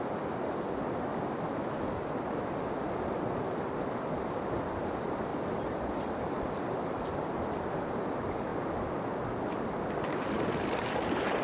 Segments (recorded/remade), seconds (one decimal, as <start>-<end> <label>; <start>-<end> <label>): 0.0-5.3 recorded; 5.3-7.3 remade; 7.3-11.4 recorded